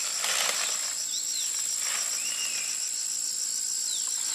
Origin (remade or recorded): recorded